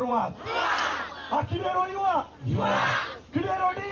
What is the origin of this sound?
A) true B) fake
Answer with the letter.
A